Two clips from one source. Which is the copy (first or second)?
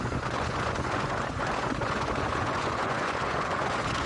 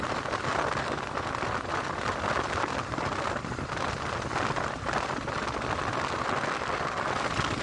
first